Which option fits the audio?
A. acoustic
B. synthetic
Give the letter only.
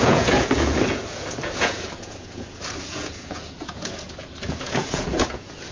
B